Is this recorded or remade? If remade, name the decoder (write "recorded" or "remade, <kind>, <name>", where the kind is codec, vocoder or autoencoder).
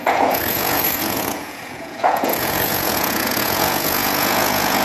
remade, vocoder, Vocos